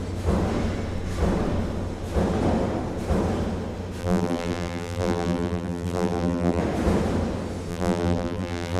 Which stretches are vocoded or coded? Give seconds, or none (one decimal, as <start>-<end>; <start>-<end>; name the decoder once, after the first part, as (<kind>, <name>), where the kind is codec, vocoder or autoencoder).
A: 4.0-6.6 (vocoder, BigVGAN v2); 7.7-8.8